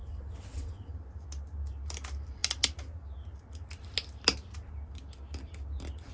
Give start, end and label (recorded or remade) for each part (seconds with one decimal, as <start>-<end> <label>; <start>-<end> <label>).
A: 0.0-0.9 remade; 0.9-6.1 recorded